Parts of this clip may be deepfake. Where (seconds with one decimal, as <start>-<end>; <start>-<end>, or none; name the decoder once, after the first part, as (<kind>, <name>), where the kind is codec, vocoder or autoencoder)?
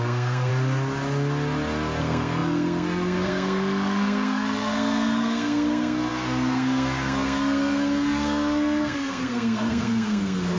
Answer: 0.0-0.5 (codec, SNAC); 2.0-10.6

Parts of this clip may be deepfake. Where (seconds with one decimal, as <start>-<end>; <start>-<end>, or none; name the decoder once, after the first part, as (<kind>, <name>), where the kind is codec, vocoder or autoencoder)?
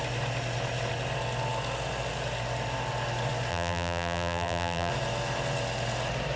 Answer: 3.5-4.9 (vocoder, BigVGAN v2)